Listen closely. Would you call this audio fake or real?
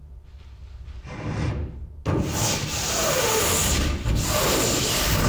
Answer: real